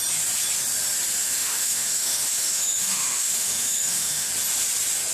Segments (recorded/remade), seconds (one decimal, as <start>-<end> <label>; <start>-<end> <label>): 0.0-1.2 recorded; 1.2-4.3 remade; 4.3-5.1 recorded